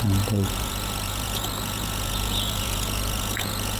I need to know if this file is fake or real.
fake